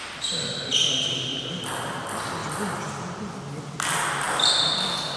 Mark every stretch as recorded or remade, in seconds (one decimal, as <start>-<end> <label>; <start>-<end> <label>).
0.0-5.2 recorded